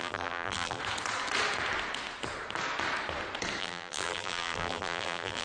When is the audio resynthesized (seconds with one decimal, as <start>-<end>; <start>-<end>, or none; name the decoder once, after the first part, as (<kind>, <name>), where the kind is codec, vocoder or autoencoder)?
0.0-0.8 (vocoder, BigVGAN v2); 3.6-5.4